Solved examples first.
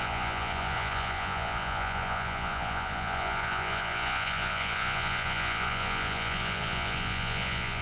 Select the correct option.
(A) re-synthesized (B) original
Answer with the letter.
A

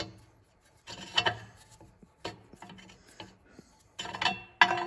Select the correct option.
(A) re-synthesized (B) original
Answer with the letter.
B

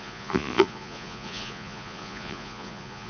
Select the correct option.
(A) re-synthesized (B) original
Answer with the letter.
A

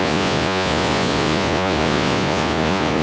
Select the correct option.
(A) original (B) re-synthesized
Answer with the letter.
B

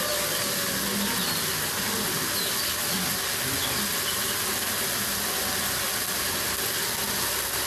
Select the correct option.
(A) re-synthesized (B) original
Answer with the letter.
B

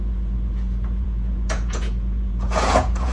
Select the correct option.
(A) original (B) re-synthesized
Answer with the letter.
B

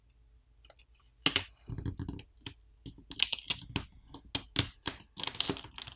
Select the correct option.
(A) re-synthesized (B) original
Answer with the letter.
B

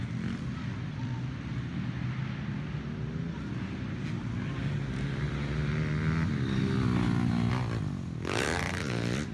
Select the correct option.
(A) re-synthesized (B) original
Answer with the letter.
B